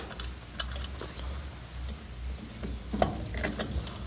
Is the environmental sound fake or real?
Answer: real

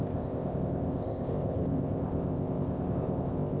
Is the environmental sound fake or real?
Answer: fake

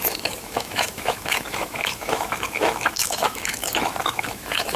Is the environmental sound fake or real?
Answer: fake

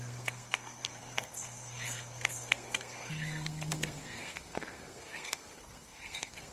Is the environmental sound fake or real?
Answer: fake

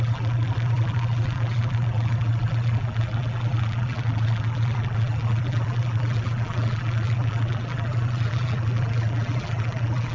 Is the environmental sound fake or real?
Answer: fake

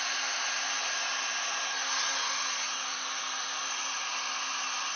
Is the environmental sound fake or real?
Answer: real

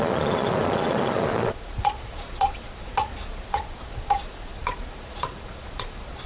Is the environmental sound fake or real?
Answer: fake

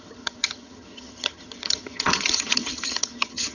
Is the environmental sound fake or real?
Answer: fake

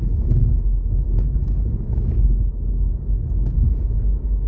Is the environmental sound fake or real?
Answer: fake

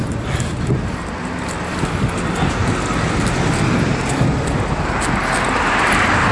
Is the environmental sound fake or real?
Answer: real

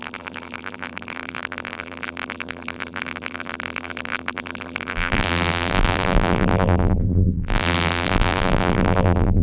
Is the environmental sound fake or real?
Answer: fake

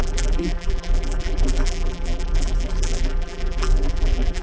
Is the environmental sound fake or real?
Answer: fake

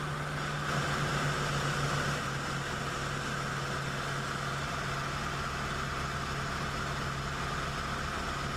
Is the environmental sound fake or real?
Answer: real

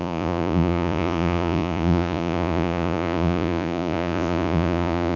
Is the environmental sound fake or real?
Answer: fake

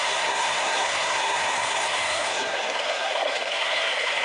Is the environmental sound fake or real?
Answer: fake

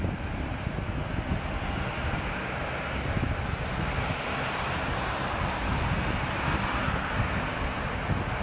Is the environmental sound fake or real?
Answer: real